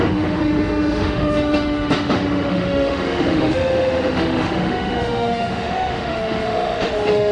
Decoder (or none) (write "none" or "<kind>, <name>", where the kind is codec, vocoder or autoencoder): autoencoder, DAC-VAE